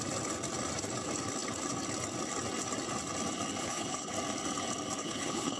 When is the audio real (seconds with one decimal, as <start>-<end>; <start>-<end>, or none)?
0.0-3.6; 4.1-5.0

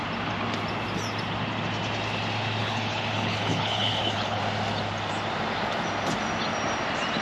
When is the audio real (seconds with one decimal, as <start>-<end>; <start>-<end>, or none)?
0.0-2.6; 4.4-7.2

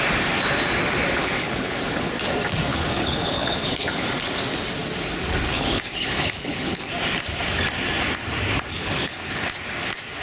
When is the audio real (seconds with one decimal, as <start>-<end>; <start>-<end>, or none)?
0.0-1.2; 2.1-2.7; 4.1-5.5; 6.9-8.7; 9.3-10.2

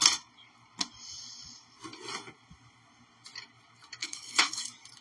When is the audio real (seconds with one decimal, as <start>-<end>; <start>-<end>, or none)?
0.0-4.0; 4.6-5.0

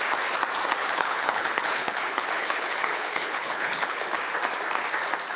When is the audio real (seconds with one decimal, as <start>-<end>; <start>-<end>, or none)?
0.0-0.8; 4.0-5.4